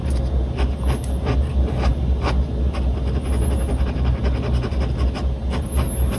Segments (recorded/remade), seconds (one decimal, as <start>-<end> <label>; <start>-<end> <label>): 0.0-6.2 recorded

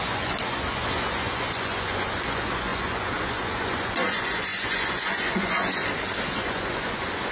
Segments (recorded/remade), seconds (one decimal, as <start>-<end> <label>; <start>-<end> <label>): 0.0-5.8 remade; 5.8-6.3 recorded; 6.3-7.3 remade

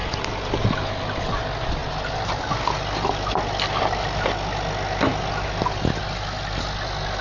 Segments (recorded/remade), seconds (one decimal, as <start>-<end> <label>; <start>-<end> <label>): 0.0-1.2 remade; 1.2-7.2 recorded

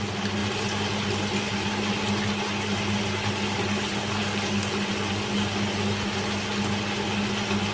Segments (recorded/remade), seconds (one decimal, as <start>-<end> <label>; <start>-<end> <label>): 0.0-7.7 recorded